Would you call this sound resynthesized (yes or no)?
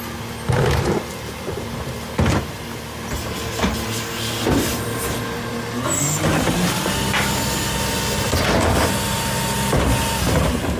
no